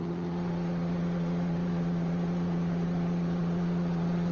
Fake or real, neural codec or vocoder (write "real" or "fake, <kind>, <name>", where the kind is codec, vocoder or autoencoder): fake, vocoder, Vocos